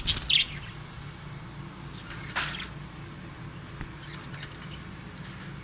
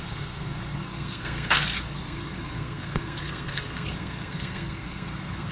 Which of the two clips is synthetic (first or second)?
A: second